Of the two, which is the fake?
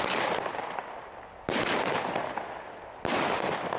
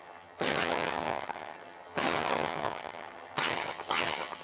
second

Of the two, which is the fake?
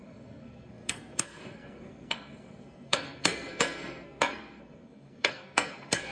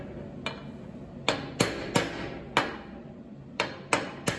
first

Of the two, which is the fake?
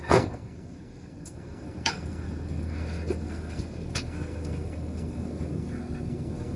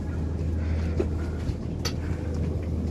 first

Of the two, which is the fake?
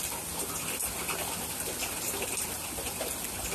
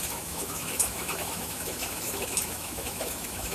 second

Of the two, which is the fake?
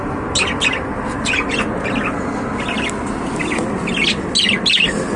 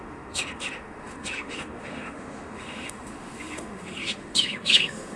second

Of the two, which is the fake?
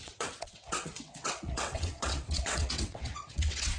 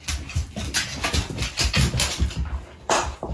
first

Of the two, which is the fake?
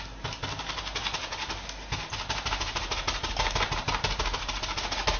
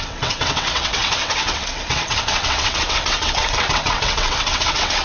second